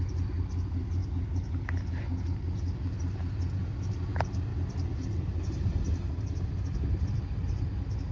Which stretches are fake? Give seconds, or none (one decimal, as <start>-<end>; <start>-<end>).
none